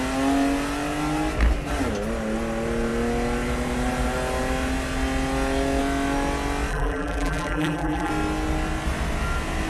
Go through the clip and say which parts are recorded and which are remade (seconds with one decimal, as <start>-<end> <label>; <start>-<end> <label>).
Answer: 0.0-6.7 recorded; 6.7-8.1 remade; 8.1-9.7 recorded